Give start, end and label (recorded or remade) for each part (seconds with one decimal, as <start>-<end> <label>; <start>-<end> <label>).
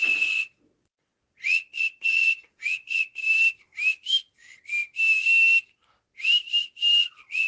0.0-3.2 remade; 3.2-7.0 recorded; 7.0-7.5 remade